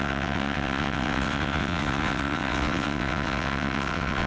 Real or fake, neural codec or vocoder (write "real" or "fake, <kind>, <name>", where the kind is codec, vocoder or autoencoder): fake, vocoder, WaveNeXt